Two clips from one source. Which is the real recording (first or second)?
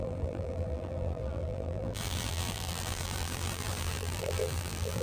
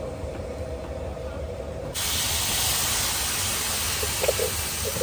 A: second